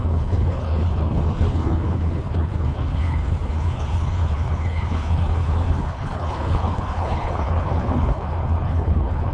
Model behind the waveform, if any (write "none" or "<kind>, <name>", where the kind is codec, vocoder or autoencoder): codec, HILCodec